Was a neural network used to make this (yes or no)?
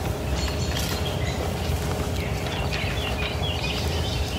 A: no